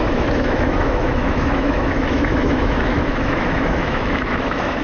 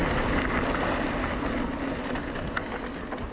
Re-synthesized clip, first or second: first